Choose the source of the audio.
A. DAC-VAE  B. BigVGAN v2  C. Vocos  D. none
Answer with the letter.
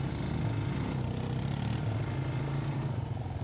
D